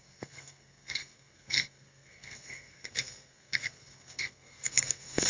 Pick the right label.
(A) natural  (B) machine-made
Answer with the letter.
B